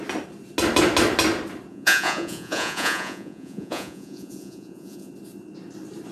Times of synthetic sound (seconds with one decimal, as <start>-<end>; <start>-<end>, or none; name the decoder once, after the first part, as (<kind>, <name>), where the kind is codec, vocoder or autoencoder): 1.7-5.1 (vocoder, Vocos)